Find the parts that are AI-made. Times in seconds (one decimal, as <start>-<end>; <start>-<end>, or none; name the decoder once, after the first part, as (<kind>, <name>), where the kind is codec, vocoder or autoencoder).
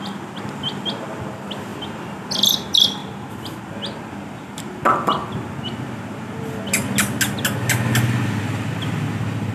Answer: 3.0-3.6 (vocoder, BigVGAN v2)